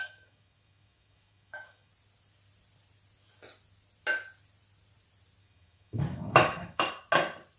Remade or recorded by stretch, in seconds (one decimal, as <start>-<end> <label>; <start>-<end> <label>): 0.0-1.9 remade; 1.9-5.4 recorded; 5.4-6.9 remade; 6.9-7.6 recorded